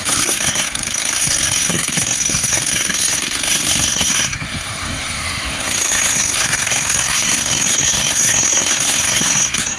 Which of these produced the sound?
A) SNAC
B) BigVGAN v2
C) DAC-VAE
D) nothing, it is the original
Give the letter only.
A